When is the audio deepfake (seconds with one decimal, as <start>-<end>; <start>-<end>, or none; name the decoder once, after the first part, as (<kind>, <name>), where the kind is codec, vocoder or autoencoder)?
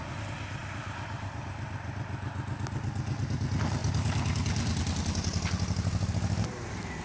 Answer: 0.6-1.9 (vocoder, BigVGAN v2)